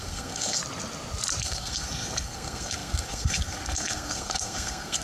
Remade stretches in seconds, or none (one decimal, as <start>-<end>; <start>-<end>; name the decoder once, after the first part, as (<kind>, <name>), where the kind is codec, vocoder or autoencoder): 0.0-0.6 (codec, SNAC); 1.4-5.0